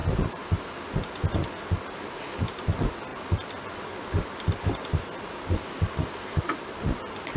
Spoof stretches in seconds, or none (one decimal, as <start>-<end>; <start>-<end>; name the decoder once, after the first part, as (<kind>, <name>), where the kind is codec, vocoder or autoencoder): none

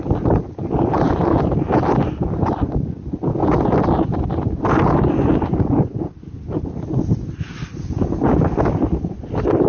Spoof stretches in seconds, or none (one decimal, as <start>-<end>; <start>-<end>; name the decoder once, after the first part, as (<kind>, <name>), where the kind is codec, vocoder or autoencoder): none

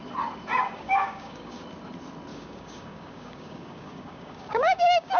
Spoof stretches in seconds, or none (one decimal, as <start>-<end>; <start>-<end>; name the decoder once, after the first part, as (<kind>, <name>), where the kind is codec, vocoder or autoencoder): 0.6-1.6 (codec, DAC); 2.3-5.2

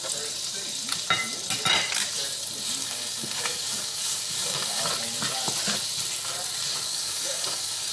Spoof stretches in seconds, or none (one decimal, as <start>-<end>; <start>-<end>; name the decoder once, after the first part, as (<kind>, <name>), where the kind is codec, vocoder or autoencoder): 2.8-4.9 (codec, DAC); 6.9-7.9